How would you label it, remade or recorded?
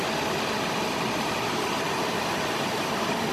recorded